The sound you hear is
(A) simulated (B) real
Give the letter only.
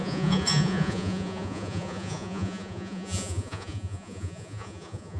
A